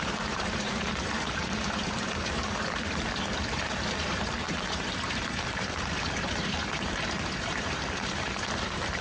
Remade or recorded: remade